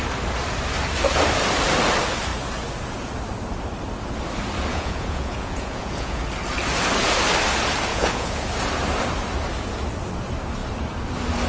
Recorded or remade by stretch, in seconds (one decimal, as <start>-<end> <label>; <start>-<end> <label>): 0.0-4.7 recorded; 4.7-6.2 remade; 6.2-7.9 recorded; 7.9-8.5 remade; 8.5-11.5 recorded